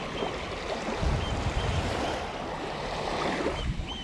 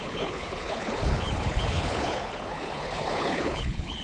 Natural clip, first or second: first